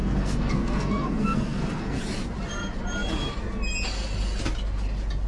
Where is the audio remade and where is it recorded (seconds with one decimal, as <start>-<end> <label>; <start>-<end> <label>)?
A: 0.0-2.0 remade; 2.0-5.3 recorded